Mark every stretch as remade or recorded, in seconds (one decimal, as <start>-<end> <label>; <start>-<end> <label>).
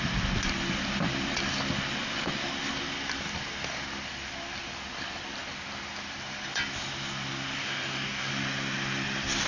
0.0-7.6 recorded; 7.6-8.3 remade; 8.3-9.5 recorded